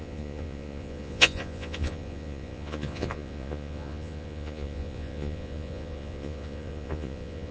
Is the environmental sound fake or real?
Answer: fake